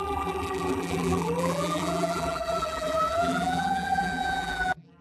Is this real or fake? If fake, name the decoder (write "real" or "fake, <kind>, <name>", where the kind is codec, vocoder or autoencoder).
fake, vocoder, BigVGAN v2